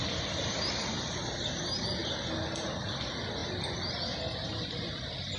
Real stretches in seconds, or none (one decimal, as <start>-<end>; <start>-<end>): 0.0-5.4